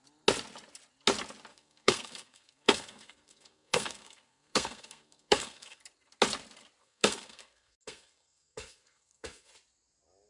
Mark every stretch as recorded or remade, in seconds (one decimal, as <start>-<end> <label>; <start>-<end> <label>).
0.0-1.5 recorded; 1.5-5.8 remade; 5.8-6.8 recorded; 6.8-9.5 remade; 9.5-10.3 recorded

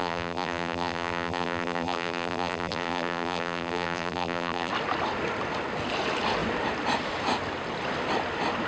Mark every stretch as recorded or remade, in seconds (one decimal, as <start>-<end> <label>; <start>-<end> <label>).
0.0-4.7 remade; 4.7-8.7 recorded

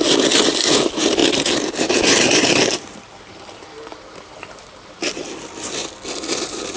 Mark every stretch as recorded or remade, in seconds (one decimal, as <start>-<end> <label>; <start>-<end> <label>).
0.0-1.2 recorded; 1.2-5.3 remade; 5.3-6.8 recorded

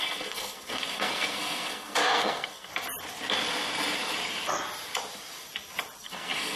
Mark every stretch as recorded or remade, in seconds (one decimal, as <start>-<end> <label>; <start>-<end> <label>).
0.0-2.7 remade; 2.7-6.0 recorded; 6.0-6.6 remade